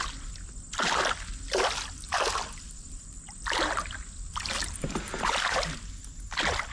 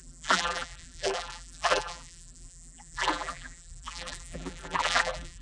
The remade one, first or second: second